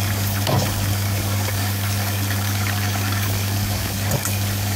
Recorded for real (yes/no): no